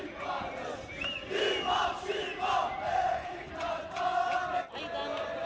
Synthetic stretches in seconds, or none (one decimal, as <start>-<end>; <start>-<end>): 3.0-3.5

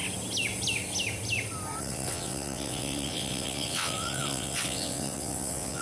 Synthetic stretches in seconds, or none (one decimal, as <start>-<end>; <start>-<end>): 1.8-5.8

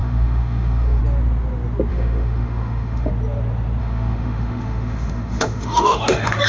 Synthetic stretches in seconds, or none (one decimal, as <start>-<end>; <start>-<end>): 0.0-1.0; 1.9-3.1; 3.8-6.5

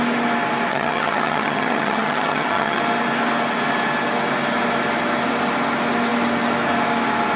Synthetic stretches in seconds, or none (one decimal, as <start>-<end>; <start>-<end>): 0.7-2.8

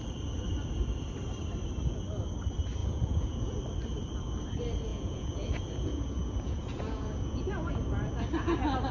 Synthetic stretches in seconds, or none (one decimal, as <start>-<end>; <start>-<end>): 2.8-3.6; 4.9-7.7

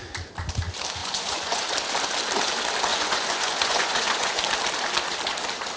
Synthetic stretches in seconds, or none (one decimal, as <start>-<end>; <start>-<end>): 1.0-1.6; 2.9-4.4

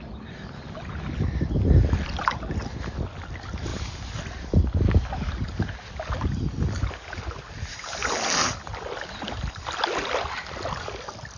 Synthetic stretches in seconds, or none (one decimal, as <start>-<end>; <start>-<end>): none